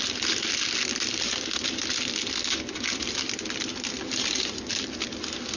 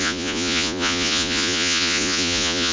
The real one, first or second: first